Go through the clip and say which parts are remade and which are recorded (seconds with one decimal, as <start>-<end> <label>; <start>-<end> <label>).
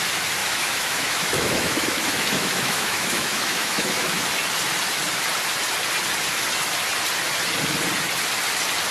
0.0-0.4 recorded; 0.4-4.2 remade; 4.2-8.9 recorded